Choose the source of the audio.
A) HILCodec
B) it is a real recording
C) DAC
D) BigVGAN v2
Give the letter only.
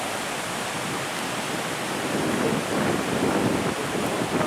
B